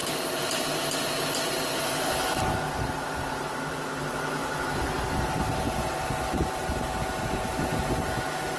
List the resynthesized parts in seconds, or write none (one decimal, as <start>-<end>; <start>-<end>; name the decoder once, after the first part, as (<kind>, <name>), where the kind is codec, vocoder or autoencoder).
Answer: none

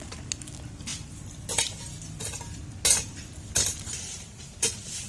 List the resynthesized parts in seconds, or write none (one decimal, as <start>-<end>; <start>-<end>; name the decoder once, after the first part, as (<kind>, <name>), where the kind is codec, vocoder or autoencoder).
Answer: none

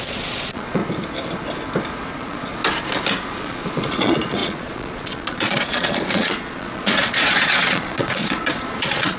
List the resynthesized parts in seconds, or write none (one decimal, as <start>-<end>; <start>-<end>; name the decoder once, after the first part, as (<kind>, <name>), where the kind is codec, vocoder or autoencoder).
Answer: 0.0-0.8 (vocoder, Vocos); 2.2-2.6; 3.3-9.2

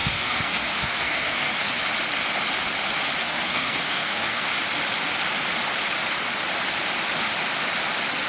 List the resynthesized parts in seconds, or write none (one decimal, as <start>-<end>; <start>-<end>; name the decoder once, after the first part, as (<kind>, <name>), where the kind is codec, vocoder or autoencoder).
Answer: 0.0-1.8 (codec, SNAC); 3.2-4.5